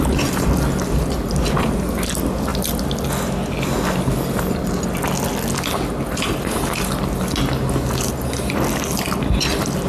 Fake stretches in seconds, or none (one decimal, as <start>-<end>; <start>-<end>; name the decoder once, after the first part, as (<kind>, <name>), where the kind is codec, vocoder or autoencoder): none